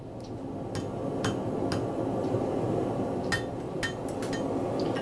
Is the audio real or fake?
real